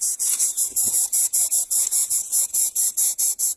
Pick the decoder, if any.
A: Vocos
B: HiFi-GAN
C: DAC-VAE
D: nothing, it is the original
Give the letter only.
A